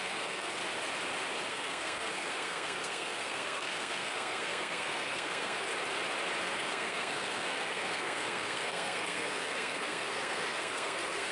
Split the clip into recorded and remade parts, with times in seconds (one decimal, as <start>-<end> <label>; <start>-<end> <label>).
0.0-0.6 remade; 0.6-1.5 recorded; 1.5-5.7 remade; 5.7-6.4 recorded; 6.4-11.3 remade